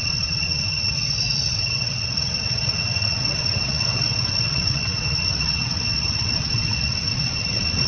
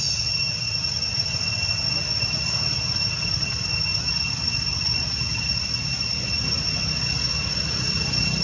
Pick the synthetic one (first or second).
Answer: first